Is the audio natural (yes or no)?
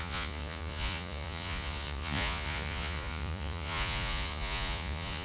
no